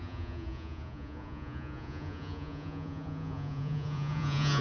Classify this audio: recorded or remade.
remade